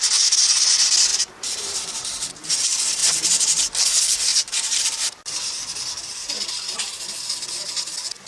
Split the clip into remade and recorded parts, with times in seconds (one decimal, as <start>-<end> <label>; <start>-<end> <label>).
0.0-1.1 recorded; 1.1-2.5 remade; 2.5-4.3 recorded; 4.3-5.2 remade; 5.2-8.3 recorded